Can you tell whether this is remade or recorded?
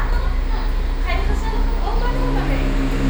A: recorded